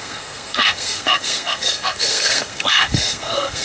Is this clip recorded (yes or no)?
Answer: no